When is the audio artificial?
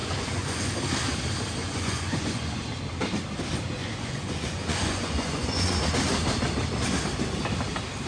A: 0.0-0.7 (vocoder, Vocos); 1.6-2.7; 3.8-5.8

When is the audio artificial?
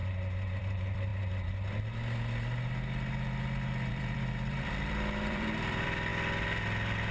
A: 0.6-1.1 (vocoder, BigVGAN v2); 3.9-6.1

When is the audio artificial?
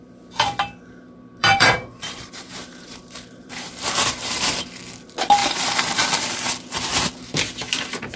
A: 1.4-4.8 (vocoder, BigVGAN v2); 5.4-6.6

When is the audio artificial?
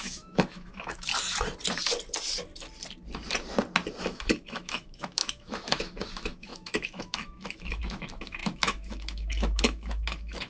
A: 0.0-1.1 (autoencoder, DAC-VAE); 4.0-10.5